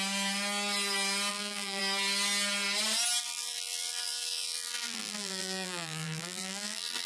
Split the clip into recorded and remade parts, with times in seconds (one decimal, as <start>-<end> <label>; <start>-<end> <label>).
0.0-1.3 recorded; 1.3-1.8 remade; 1.8-3.2 recorded; 3.2-7.1 remade